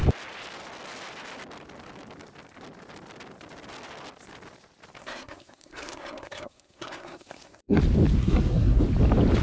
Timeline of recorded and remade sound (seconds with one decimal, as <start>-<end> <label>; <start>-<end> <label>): 0.0-5.0 recorded; 5.0-7.8 remade; 7.8-8.2 recorded; 8.2-8.8 remade; 8.8-9.4 recorded